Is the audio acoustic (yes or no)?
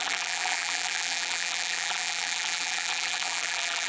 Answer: no